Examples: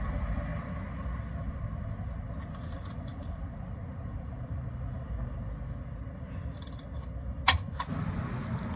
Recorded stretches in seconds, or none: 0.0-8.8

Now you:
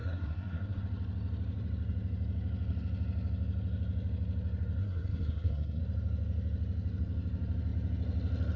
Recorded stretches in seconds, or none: 0.8-4.8; 5.8-8.6

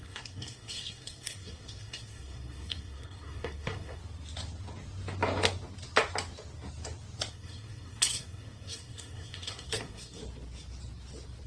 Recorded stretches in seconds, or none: 4.0-7.3; 10.2-11.5

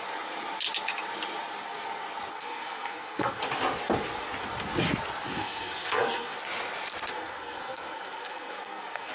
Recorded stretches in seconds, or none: 0.0-2.3; 3.4-5.3; 6.4-7.1

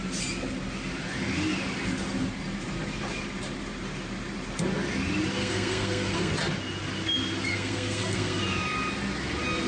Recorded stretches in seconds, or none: 0.0-5.4; 6.3-7.5; 8.4-9.7

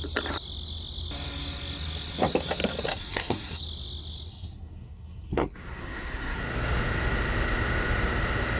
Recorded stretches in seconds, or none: 0.0-2.9; 3.6-4.3; 6.4-8.6

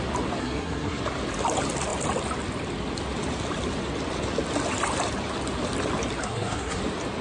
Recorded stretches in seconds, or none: 0.0-0.4; 1.0-6.2; 6.8-7.2